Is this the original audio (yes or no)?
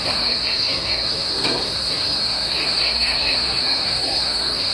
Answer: no